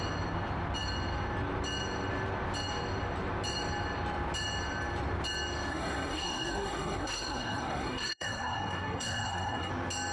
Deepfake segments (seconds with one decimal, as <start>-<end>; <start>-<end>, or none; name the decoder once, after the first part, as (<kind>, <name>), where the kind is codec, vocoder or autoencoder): 5.7-9.7 (codec, SNAC)

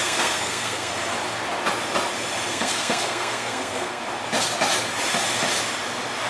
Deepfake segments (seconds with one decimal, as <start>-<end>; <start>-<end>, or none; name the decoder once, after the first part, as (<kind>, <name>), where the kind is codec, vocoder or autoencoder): 0.0-0.9 (codec, SNAC); 2.5-4.0

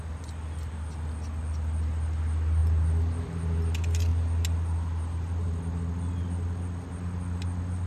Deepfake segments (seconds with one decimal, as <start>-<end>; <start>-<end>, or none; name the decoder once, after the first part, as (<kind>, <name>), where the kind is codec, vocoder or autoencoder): none

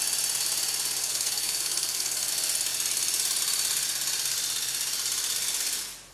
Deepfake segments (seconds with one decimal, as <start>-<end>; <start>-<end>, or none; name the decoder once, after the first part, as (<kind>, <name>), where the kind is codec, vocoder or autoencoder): 1.0-2.3 (codec, SNAC)

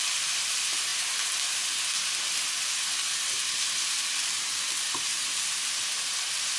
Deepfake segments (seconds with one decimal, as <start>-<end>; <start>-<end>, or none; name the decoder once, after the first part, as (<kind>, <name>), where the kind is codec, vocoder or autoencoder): none

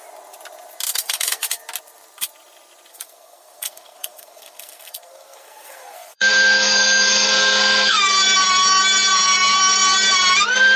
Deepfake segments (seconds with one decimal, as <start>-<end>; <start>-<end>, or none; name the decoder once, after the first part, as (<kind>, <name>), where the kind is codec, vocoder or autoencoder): 0.9-1.6 (codec, SNAC); 2.9-8.0

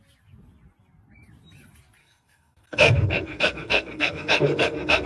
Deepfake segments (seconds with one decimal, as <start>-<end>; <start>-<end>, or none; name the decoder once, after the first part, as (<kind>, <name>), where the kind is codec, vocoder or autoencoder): 2.0-5.1 (codec, SNAC)